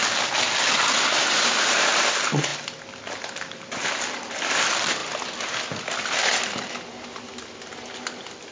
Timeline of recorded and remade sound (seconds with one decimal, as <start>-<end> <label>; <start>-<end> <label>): 0.0-8.5 recorded